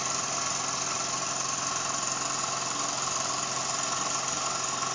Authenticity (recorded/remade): recorded